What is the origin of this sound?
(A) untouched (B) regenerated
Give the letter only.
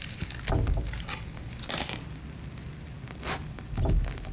A